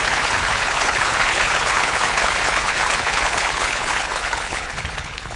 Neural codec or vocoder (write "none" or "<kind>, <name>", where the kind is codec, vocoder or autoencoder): codec, HILCodec